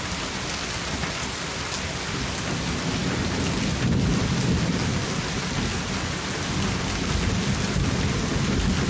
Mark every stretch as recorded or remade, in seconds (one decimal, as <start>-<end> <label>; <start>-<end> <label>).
0.0-8.9 recorded